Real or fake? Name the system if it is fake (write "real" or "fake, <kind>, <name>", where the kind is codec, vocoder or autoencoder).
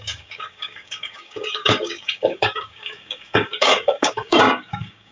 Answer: fake, codec, DAC